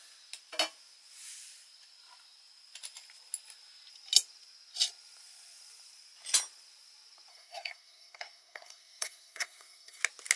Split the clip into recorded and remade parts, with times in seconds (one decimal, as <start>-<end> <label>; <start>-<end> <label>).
0.0-7.3 recorded; 7.3-10.0 remade; 10.0-10.4 recorded